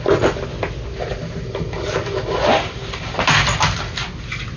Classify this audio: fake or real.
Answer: real